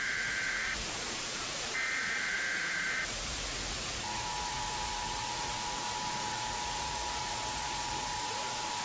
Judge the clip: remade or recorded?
remade